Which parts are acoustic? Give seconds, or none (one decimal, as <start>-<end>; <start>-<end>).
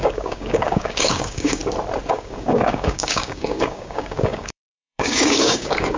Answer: 1.6-2.1